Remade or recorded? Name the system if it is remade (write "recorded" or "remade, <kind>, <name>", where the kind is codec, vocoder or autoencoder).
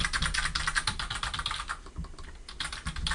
recorded